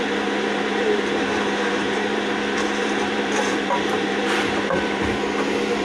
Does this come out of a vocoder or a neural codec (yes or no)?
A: yes